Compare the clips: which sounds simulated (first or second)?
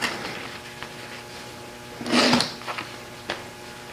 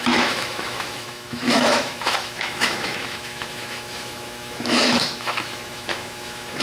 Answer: second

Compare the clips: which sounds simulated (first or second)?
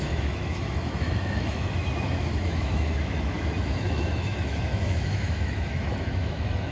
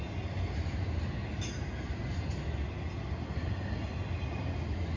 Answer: first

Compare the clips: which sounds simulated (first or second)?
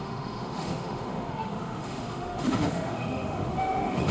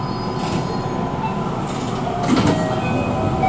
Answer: first